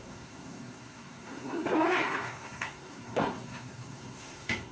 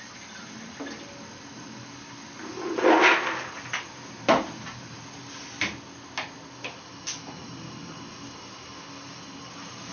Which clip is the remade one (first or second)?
first